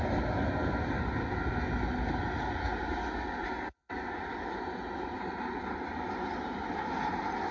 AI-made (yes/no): no